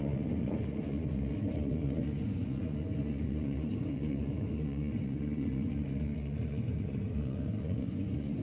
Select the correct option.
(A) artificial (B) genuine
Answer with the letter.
A